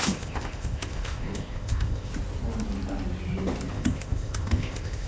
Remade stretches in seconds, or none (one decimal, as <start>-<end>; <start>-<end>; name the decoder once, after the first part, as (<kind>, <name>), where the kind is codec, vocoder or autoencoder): 0.0-2.1 (codec, ZipCodec); 3.7-5.1